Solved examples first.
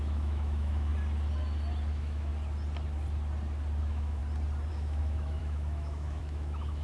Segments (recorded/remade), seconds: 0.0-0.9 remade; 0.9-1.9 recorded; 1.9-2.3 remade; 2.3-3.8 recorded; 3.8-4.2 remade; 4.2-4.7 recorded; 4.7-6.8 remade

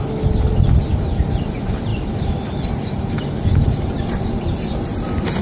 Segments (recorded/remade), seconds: 0.0-5.4 recorded

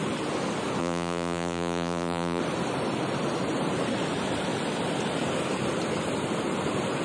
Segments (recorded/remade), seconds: 0.0-0.8 recorded; 0.8-2.4 remade; 2.4-7.0 recorded

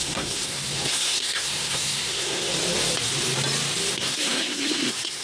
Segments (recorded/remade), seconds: 0.0-2.5 remade; 2.5-3.9 recorded; 3.9-5.2 remade

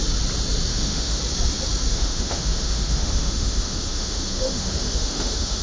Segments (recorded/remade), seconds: 0.0-0.7 recorded; 0.7-1.2 remade; 1.2-1.9 recorded; 1.9-5.6 remade